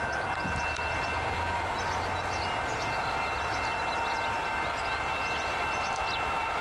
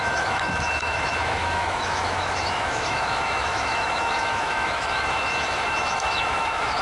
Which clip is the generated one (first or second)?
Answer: second